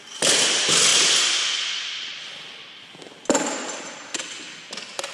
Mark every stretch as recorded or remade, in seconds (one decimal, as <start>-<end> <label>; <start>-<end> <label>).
0.0-5.1 recorded